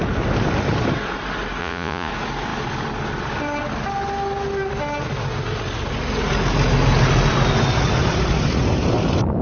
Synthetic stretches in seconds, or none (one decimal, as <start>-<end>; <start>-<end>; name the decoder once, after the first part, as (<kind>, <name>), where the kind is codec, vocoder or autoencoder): 1.6-2.1 (vocoder, Vocos)